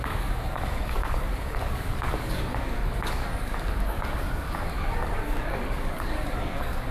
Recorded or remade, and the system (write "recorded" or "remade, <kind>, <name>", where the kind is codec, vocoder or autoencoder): remade, codec, DAC